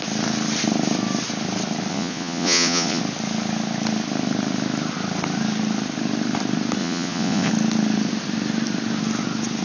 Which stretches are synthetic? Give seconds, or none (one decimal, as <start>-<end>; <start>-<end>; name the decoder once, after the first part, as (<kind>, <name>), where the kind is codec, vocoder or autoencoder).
1.9-3.0 (vocoder, Vocos); 6.8-7.5